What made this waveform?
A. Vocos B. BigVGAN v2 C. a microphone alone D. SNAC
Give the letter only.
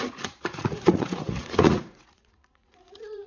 A